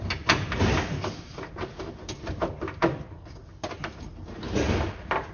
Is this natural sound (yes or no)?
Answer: yes